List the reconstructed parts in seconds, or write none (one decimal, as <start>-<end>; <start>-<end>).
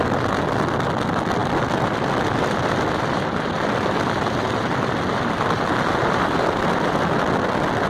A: 1.4-4.5; 6.0-6.6